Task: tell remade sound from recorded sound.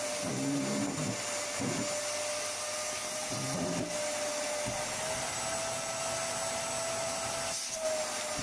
recorded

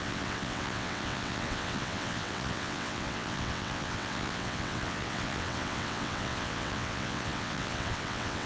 remade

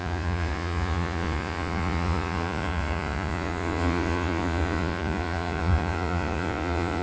remade